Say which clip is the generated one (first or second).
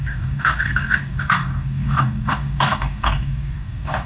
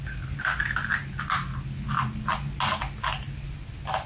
first